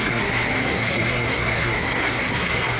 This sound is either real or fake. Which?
fake